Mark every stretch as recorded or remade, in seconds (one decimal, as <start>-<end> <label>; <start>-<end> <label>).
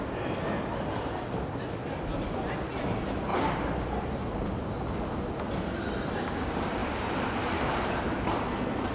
0.0-3.3 recorded; 3.3-4.5 remade; 4.5-6.8 recorded; 6.8-8.9 remade